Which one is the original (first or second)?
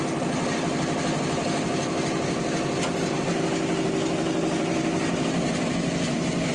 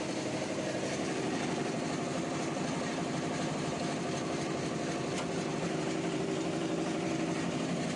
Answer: first